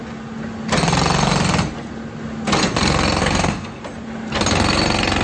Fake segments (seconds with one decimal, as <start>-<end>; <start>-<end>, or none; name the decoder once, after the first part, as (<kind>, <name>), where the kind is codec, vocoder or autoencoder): 3.2-3.8 (codec, SNAC)